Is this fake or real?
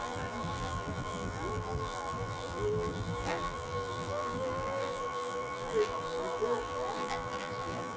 fake